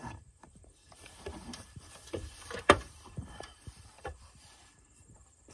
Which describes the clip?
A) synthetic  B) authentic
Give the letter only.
A